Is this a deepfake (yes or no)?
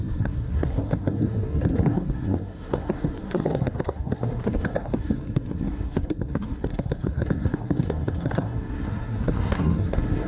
yes